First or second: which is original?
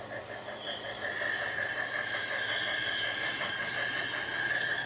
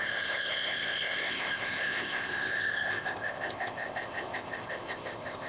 first